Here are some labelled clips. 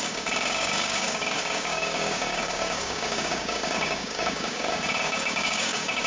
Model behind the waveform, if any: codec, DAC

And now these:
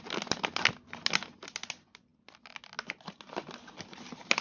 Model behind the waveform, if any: none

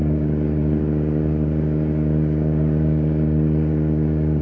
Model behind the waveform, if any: codec, DAC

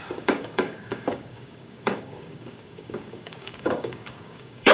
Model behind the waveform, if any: codec, DAC